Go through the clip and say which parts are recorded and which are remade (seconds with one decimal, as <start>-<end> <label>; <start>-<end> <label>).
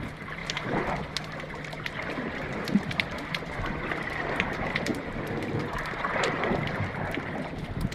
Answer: 0.0-7.9 recorded